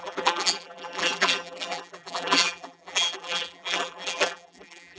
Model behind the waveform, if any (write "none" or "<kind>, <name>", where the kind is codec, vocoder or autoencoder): vocoder, BigVGAN v2